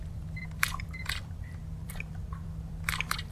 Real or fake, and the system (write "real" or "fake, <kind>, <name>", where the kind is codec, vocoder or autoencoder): fake, vocoder, BigVGAN v2